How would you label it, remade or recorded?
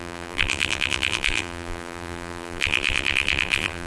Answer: remade